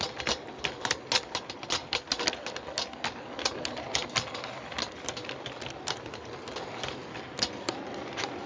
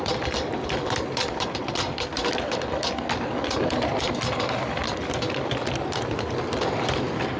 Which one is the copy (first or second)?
second